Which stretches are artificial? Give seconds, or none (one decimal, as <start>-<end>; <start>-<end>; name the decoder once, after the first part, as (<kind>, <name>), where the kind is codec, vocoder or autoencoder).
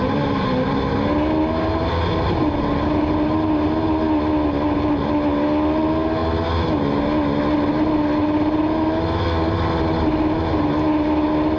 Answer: none